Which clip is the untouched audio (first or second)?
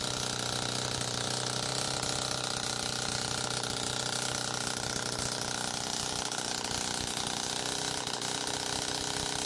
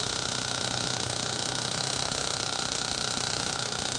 first